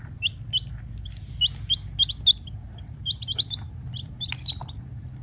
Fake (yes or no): no